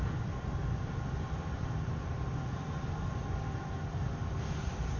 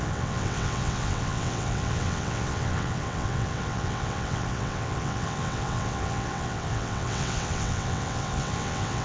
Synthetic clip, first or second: second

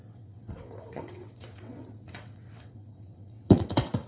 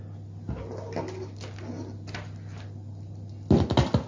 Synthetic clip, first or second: first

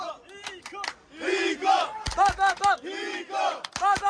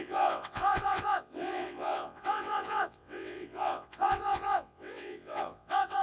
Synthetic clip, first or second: second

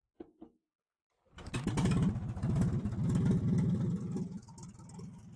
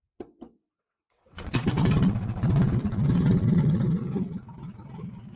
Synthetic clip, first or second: second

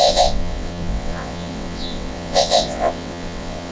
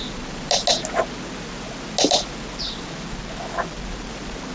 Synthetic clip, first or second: first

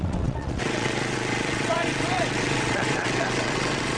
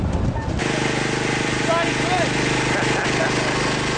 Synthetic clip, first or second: first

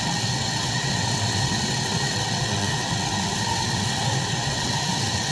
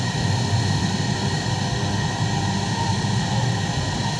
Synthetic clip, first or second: first